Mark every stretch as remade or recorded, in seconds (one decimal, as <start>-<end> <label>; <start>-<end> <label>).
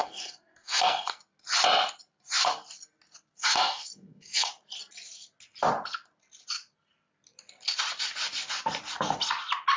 0.0-1.2 remade; 1.2-3.4 recorded; 3.4-4.5 remade; 4.5-9.8 recorded